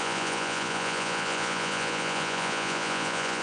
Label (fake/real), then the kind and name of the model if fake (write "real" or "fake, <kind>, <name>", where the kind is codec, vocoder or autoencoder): fake, vocoder, Vocos